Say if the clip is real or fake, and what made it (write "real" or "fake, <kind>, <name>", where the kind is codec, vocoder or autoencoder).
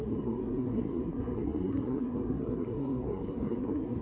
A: fake, codec, SNAC